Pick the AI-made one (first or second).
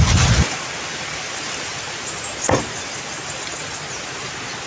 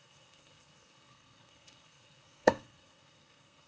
second